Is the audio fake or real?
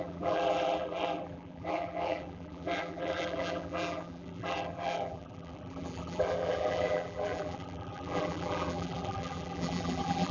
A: fake